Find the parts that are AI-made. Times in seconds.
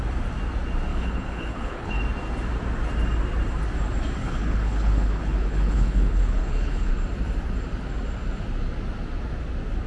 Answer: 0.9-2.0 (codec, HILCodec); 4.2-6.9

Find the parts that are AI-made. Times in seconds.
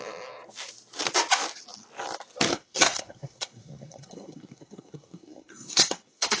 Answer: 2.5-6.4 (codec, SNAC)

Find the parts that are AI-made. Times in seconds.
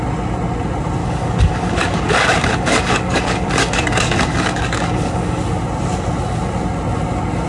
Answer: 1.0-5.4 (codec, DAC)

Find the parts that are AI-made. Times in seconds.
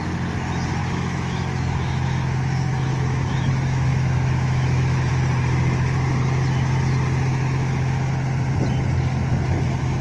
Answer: 0.8-5.1 (autoencoder, DAC-VAE); 7.3-8.1